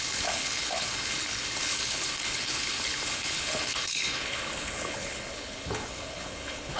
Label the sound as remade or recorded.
remade